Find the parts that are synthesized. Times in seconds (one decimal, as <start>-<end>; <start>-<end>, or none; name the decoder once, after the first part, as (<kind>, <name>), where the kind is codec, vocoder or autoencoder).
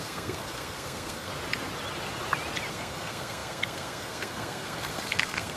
0.0-1.3 (codec, SNAC); 2.7-5.6